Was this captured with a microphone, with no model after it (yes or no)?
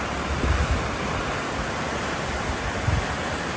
yes